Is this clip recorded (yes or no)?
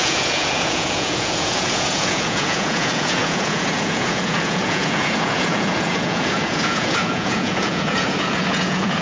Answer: no